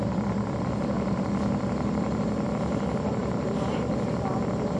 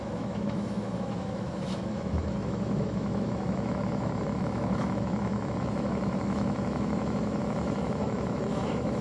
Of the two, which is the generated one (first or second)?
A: second